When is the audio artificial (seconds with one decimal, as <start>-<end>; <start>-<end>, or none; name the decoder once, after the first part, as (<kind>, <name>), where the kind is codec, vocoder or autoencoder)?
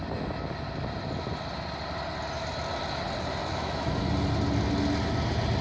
3.4-4.0 (autoencoder, DAC-VAE)